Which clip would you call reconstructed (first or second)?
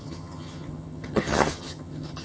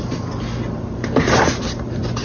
first